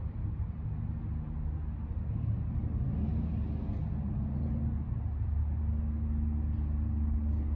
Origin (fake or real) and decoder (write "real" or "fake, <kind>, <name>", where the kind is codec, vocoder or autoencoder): real